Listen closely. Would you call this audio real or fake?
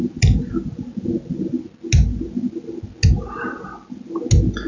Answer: real